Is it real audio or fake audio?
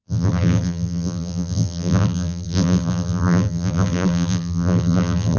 fake